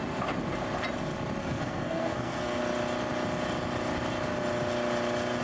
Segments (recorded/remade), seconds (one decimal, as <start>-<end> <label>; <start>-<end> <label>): 0.0-1.4 recorded; 1.4-2.6 remade; 2.6-5.4 recorded